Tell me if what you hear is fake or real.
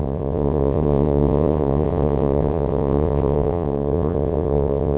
fake